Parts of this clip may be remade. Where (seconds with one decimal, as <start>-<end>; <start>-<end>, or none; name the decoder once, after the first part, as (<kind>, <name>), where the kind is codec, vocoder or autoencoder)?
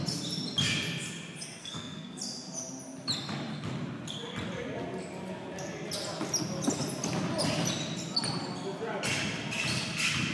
1.6-2.2 (codec, SNAC)